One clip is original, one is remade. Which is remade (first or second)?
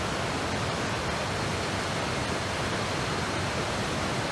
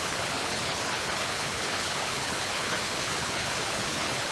second